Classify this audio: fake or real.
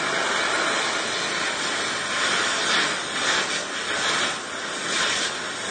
real